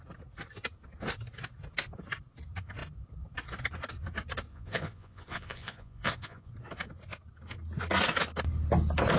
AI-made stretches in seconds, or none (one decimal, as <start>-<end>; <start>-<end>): 4.5-6.5